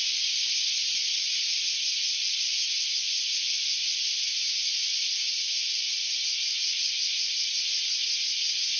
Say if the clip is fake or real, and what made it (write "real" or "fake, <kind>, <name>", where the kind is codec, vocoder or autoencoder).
real